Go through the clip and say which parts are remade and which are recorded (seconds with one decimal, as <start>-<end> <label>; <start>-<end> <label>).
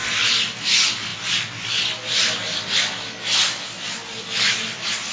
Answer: 0.0-5.1 recorded